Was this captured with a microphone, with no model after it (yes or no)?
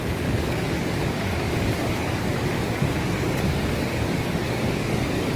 no